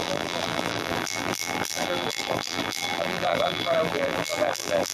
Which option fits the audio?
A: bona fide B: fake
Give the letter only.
B